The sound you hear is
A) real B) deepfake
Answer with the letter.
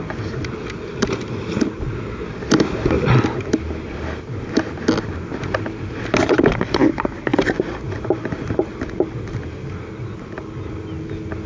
A